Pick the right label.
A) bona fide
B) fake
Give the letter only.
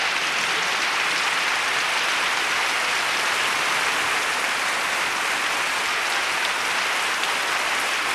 A